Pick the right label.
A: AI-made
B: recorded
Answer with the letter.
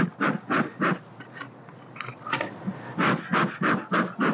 B